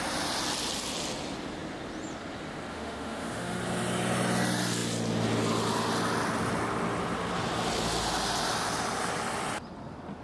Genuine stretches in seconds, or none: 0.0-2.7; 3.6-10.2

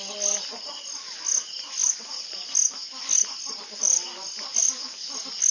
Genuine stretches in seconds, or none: 0.0-5.5

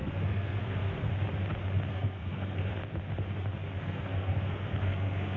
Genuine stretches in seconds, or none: 1.1-1.9; 2.7-3.8

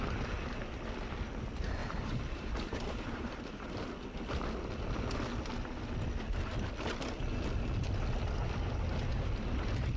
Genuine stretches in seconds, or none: 0.0-1.8; 3.9-10.0

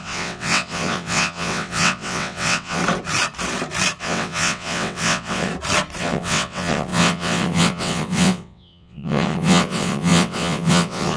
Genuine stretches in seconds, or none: 2.8-4.0; 5.5-6.0

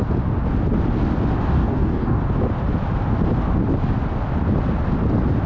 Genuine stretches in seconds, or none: 0.0-1.4; 2.2-5.5

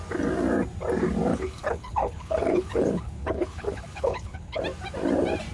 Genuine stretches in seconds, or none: 0.0-1.3; 4.6-5.5